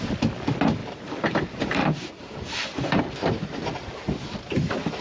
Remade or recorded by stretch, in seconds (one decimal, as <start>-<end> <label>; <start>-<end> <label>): 0.0-0.8 recorded; 0.8-3.0 remade; 3.0-5.0 recorded